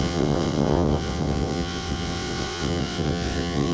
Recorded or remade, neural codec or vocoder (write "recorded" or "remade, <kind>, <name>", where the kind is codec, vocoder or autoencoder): remade, vocoder, WaveNeXt